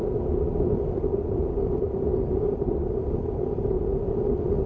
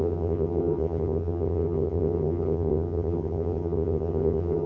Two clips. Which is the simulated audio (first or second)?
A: second